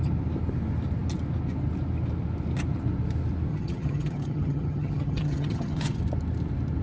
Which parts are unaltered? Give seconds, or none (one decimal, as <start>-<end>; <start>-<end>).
0.0-3.5; 6.0-6.8